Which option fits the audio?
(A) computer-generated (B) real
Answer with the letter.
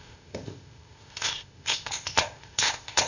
A